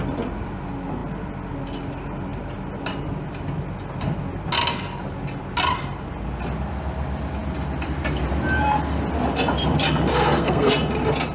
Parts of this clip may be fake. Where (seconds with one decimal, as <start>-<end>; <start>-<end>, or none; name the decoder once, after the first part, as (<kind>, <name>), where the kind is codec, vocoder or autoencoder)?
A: 10.1-10.7 (codec, SNAC)